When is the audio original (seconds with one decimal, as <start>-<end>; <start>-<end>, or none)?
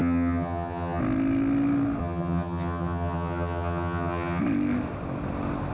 1.0-2.0; 4.4-5.7